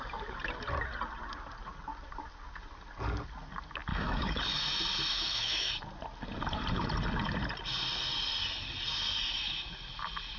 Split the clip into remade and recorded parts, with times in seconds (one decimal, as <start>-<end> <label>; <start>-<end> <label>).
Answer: 0.0-3.9 recorded; 3.9-4.4 remade; 4.4-5.1 recorded; 5.1-5.7 remade; 5.7-10.4 recorded

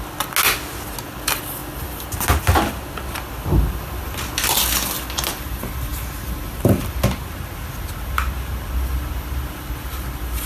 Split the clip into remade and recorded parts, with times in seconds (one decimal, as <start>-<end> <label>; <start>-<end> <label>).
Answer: 0.0-10.5 recorded

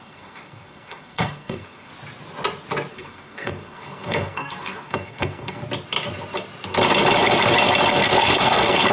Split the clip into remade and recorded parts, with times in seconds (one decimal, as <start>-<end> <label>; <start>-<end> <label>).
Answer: 0.0-1.9 remade; 1.9-2.9 recorded; 2.9-5.6 remade; 5.6-7.9 recorded; 7.9-8.9 remade

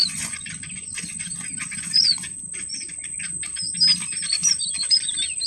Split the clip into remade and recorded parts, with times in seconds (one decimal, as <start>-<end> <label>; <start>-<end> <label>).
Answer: 0.0-3.3 remade; 3.3-5.5 recorded